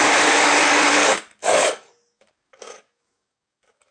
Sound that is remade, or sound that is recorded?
remade